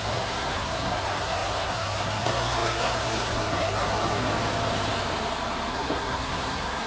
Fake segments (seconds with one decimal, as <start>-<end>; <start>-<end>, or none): 0.0-4.3; 5.7-6.9

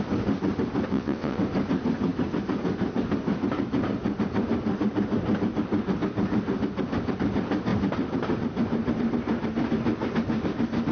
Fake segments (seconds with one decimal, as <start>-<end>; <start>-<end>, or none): 0.9-1.4

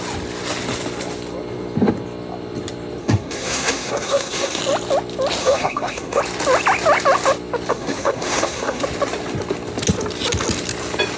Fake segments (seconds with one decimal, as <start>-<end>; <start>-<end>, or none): 3.0-4.6; 5.4-6.2; 7.7-8.8